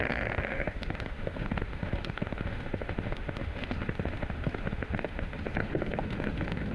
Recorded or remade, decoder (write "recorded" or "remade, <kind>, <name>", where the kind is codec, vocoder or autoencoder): remade, autoencoder, DAC-VAE